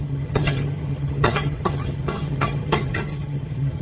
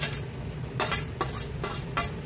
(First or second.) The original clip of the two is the second